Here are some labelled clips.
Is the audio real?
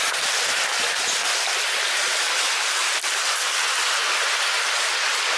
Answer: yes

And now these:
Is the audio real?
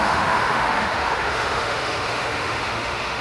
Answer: no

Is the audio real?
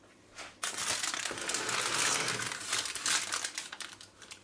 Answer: yes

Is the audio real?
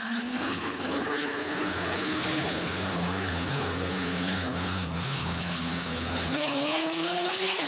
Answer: no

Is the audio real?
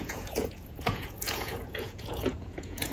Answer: no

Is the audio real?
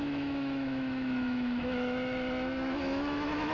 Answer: no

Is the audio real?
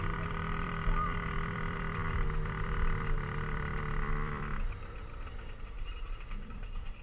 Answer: no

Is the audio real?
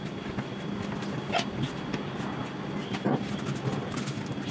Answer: yes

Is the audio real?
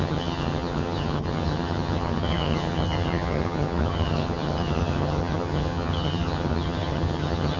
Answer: no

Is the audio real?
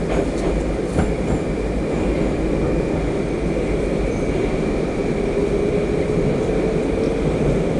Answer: yes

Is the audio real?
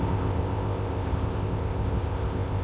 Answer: no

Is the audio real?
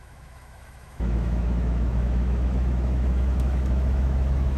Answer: no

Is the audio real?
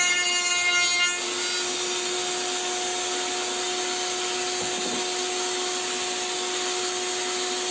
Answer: yes